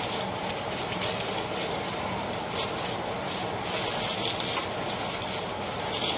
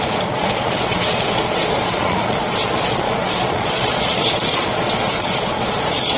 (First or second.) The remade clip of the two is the second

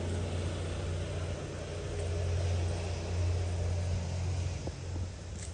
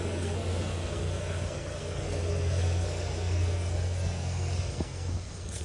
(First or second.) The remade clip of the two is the second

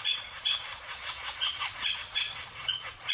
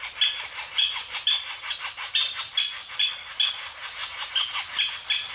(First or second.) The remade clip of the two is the first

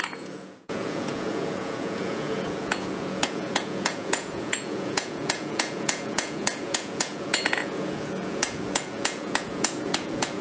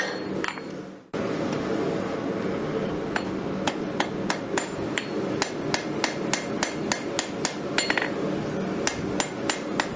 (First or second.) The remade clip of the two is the first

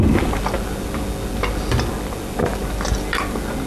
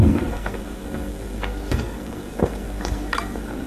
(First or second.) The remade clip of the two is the second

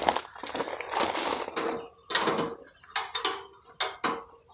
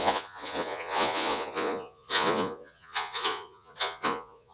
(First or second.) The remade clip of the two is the second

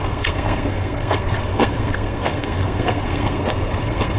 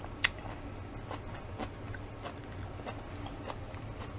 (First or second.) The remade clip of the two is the first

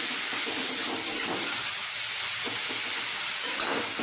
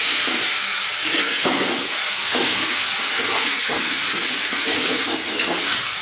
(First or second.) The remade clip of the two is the second